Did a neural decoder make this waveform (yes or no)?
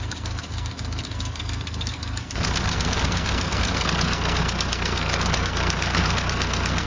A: yes